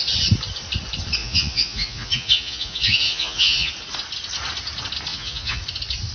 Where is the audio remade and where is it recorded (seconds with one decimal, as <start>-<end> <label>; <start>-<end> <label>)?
0.0-1.2 recorded; 1.2-3.7 remade; 3.7-5.1 recorded; 5.1-5.6 remade; 5.6-6.1 recorded